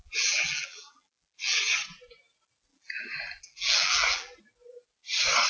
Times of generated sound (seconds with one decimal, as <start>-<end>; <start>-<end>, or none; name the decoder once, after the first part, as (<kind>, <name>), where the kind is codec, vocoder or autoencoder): 0.0-1.6 (vocoder, BigVGAN v2); 2.7-4.4